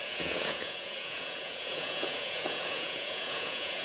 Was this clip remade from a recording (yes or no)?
yes